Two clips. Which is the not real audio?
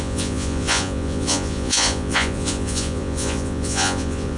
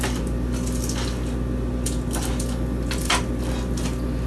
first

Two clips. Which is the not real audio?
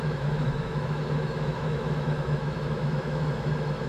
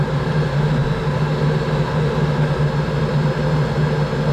first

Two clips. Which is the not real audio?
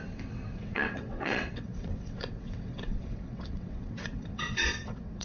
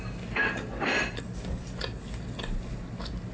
first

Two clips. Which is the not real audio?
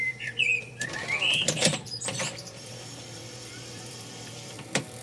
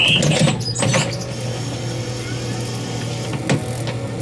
first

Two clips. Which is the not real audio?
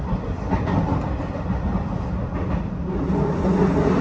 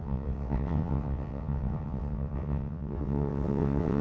second